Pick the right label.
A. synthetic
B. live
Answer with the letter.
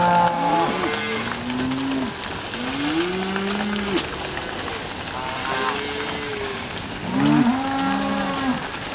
B